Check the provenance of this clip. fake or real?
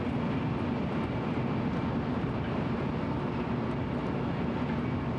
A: real